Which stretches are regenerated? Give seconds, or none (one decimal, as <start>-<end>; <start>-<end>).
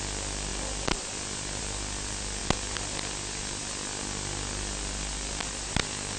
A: none